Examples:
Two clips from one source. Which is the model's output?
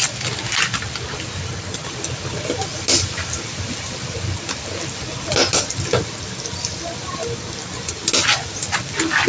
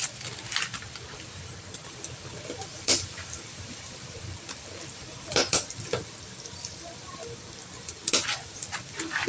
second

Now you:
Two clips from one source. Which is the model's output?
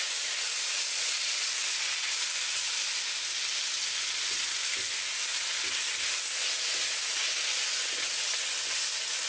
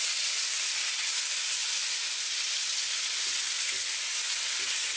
second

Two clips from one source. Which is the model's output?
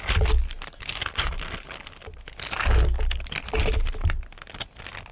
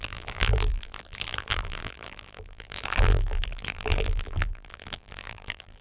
second